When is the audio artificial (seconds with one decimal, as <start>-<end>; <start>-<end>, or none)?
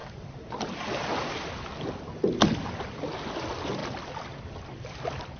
0.0-2.1